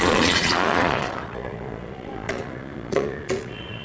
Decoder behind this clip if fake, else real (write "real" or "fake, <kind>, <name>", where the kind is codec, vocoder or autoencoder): fake, vocoder, Vocos